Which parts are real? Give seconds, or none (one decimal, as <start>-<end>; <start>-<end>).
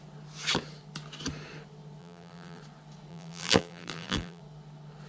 0.0-2.0; 2.6-3.1; 4.4-5.1